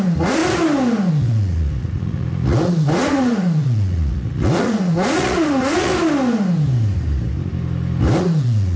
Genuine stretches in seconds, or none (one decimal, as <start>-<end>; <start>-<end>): 0.4-1.1; 5.9-8.2